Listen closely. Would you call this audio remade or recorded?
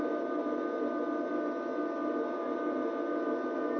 recorded